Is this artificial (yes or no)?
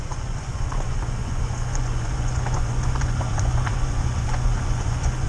yes